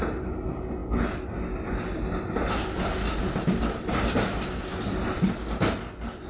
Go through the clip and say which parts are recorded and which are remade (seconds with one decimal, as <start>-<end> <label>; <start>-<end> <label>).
0.0-6.3 recorded

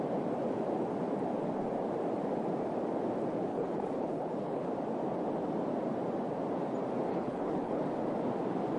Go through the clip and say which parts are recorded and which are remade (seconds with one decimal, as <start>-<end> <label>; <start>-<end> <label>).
0.0-3.5 recorded; 3.5-4.7 remade; 4.7-7.1 recorded; 7.1-7.8 remade; 7.8-8.8 recorded

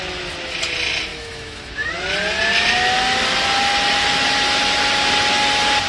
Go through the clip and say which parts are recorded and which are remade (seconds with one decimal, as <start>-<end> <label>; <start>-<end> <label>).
0.0-1.1 recorded; 1.1-1.9 remade; 1.9-5.9 recorded

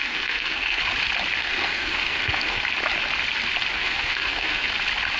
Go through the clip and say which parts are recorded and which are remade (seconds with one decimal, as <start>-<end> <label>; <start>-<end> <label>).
0.0-0.8 remade; 0.8-1.4 recorded; 1.4-2.6 remade; 2.6-3.7 recorded; 3.7-4.7 remade; 4.7-5.2 recorded

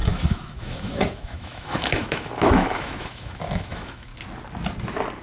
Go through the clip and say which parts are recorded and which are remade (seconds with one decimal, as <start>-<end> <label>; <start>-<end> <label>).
0.0-4.1 remade; 4.1-5.2 recorded